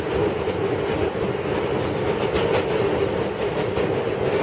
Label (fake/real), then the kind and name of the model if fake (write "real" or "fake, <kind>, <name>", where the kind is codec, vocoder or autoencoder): real